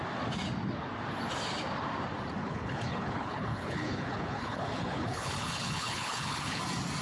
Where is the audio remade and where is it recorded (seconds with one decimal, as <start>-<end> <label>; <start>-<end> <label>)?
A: 0.0-2.4 recorded; 2.4-6.6 remade; 6.6-7.0 recorded